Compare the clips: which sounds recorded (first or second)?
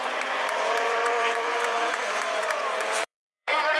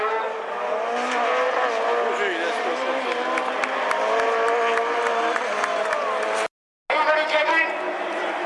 second